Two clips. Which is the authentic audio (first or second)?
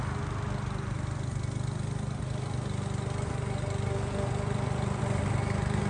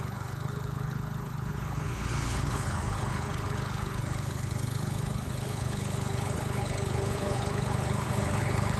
first